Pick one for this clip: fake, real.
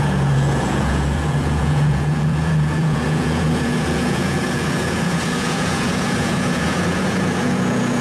fake